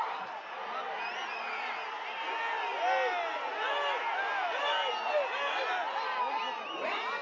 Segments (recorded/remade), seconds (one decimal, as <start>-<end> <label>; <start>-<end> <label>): 0.0-7.2 recorded